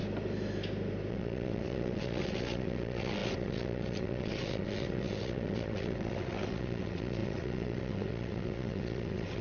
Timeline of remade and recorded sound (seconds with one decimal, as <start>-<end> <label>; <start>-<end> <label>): 0.0-1.1 recorded; 1.1-9.4 remade